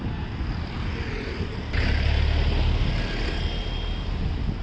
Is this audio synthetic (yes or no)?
no